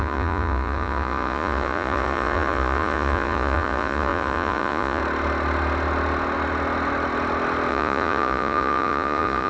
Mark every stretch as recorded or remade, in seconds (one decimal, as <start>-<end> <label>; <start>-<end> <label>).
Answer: 0.0-5.0 remade; 5.0-7.7 recorded; 7.7-9.5 remade